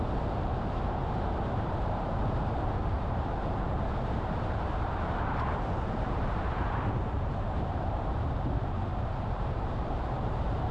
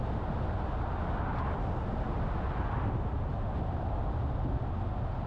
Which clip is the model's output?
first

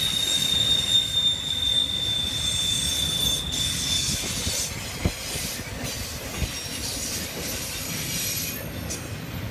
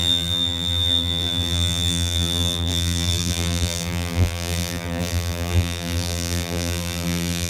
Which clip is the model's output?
second